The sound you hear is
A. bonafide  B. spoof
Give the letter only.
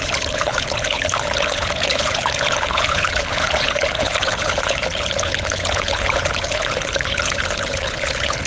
B